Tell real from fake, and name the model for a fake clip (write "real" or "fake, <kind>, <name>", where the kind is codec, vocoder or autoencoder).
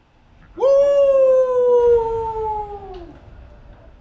real